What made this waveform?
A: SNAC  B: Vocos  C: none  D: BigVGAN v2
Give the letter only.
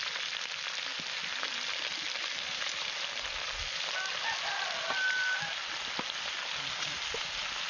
C